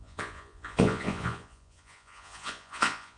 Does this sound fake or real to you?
fake